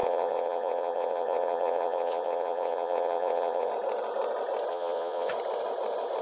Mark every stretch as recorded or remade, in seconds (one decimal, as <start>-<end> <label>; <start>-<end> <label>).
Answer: 0.0-3.7 remade; 3.7-4.7 recorded; 4.7-5.3 remade; 5.3-6.2 recorded